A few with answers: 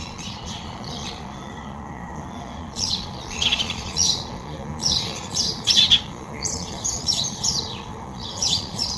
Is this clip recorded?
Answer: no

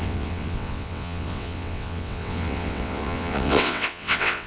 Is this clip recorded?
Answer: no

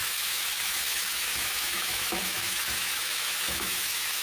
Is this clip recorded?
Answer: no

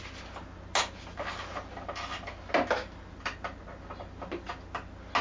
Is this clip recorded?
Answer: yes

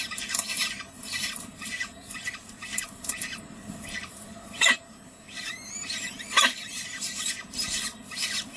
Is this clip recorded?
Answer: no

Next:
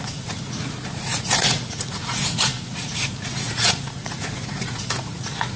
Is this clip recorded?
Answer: no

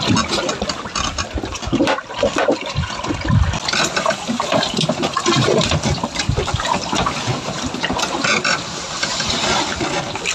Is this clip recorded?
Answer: yes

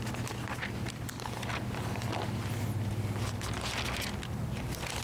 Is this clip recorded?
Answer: yes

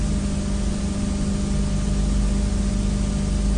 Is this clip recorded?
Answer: yes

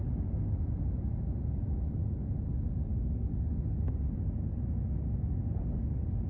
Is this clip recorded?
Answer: yes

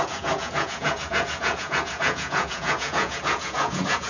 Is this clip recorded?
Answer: no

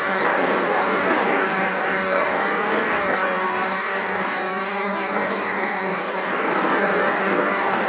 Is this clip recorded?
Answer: no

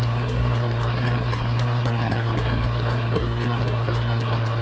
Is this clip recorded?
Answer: no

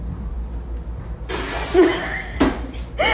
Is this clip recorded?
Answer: yes